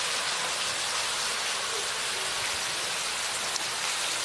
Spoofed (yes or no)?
no